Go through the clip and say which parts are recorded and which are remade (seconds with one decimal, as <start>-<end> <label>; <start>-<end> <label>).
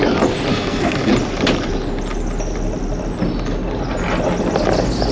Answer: 0.0-0.5 recorded; 0.5-1.1 remade; 1.1-5.1 recorded